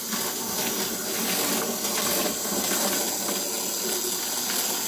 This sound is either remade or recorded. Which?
recorded